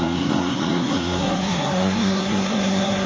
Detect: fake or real fake